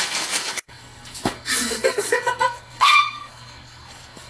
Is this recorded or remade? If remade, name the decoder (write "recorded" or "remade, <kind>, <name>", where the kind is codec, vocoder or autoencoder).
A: remade, codec, SNAC